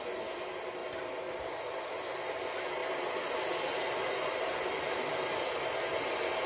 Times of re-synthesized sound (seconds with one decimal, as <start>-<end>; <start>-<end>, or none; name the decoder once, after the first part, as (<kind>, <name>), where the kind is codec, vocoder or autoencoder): none